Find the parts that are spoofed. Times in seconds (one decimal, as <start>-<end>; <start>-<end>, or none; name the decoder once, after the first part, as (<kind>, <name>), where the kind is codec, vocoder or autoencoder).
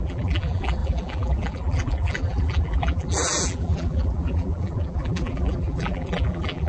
0.0-6.7 (vocoder, BigVGAN v2)